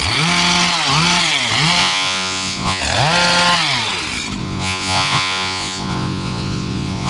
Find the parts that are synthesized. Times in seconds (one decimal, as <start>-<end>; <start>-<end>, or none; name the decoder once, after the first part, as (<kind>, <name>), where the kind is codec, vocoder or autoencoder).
1.8-2.8 (vocoder, Vocos); 4.4-7.1